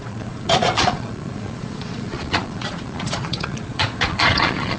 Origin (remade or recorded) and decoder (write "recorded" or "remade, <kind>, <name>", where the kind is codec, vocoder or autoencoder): remade, vocoder, Vocos